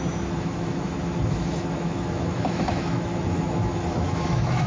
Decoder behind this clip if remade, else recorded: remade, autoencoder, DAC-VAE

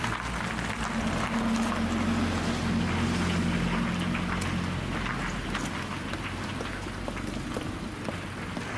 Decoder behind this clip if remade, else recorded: recorded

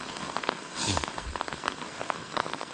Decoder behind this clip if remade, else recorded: remade, codec, SNAC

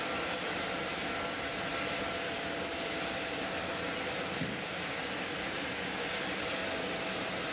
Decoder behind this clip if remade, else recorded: recorded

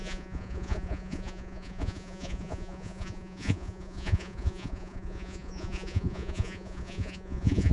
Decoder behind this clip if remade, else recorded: remade, vocoder, Vocos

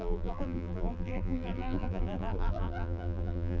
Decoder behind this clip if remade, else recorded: remade, vocoder, BigVGAN v2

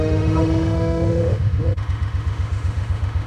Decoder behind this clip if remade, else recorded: remade, autoencoder, DAC-VAE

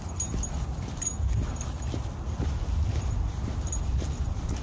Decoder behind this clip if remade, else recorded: recorded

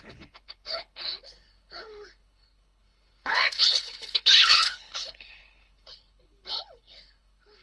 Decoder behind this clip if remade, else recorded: remade, codec, HILCodec